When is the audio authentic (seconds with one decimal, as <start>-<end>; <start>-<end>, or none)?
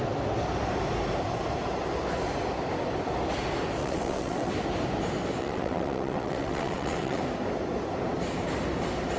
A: 0.0-3.8; 4.5-5.4; 7.2-9.2